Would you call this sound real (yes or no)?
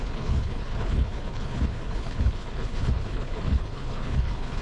no